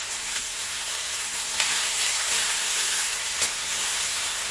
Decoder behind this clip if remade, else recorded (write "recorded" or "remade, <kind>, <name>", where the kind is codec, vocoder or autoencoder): remade, codec, SNAC